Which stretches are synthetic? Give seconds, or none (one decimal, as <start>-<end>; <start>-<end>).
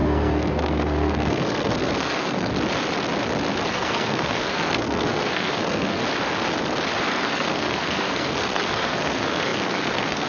0.0-2.5; 3.7-6.0; 7.1-10.3